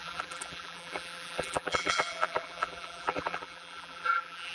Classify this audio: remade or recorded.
remade